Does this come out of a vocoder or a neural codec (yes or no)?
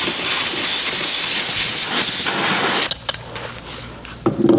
no